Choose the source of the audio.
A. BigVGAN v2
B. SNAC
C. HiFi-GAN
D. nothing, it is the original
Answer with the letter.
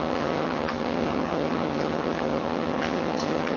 C